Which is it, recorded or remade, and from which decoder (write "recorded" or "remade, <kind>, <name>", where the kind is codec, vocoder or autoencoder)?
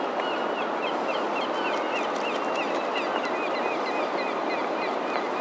recorded